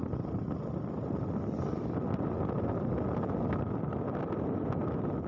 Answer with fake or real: real